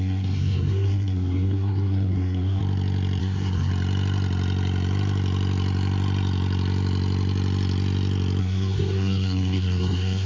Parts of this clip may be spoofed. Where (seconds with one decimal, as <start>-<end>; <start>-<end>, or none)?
0.0-2.6; 3.2-3.7; 8.4-10.3